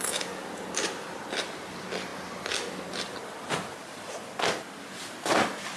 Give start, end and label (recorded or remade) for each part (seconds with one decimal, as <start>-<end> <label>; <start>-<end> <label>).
0.0-5.8 recorded